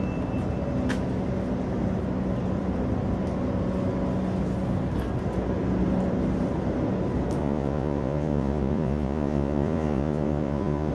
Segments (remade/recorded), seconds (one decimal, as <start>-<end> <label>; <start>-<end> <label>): 0.0-7.4 recorded; 7.4-10.9 remade